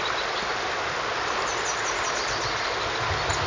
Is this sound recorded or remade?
recorded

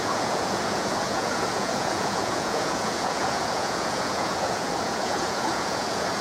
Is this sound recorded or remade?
remade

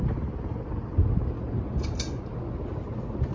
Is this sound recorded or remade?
recorded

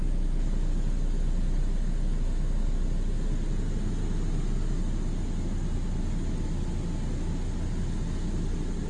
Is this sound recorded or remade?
recorded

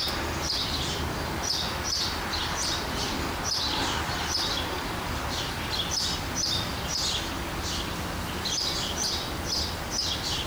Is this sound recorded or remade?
recorded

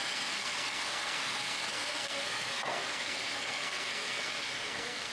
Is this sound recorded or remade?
remade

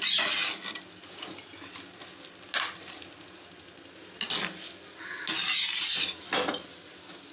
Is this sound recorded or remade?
recorded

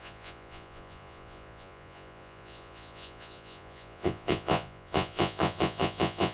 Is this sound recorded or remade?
remade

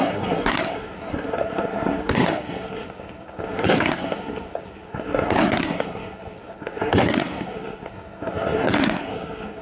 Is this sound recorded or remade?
remade